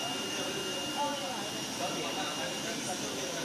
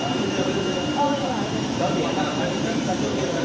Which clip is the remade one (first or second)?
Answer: second